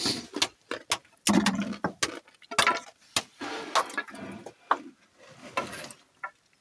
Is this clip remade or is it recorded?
recorded